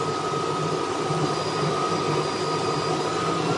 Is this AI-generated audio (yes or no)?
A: no